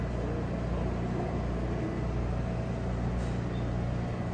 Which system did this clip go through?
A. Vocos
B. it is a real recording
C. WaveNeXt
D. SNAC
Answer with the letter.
B